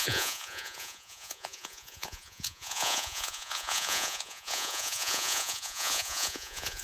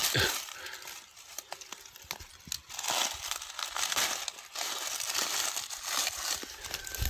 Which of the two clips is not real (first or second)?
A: first